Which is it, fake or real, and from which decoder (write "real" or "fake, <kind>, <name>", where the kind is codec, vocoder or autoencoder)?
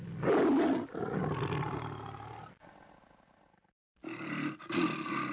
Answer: real